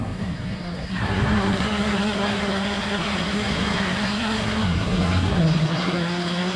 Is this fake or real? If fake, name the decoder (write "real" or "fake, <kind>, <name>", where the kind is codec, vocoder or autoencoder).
fake, codec, SNAC